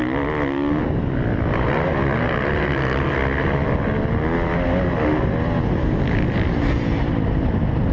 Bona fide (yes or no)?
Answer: yes